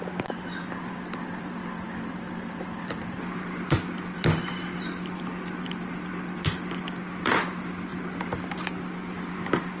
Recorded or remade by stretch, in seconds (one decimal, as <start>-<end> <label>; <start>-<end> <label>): 0.0-9.8 recorded